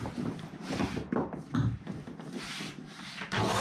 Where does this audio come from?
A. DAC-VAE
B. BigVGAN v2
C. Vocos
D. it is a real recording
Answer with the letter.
B